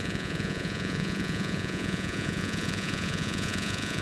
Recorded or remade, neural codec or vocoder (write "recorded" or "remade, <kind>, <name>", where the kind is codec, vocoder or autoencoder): remade, vocoder, Vocos